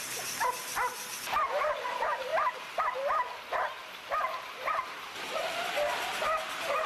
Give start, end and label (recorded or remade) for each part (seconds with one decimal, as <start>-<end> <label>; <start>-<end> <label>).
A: 0.0-2.3 recorded; 2.3-2.8 remade; 2.8-4.2 recorded; 4.2-5.4 remade; 5.4-6.9 recorded